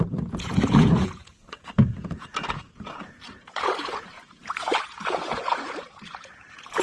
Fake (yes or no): yes